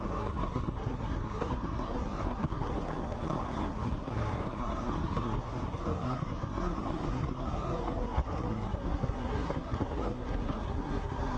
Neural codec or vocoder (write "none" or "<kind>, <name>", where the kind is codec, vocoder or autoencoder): codec, SNAC